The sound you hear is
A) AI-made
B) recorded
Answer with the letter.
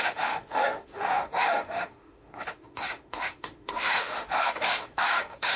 A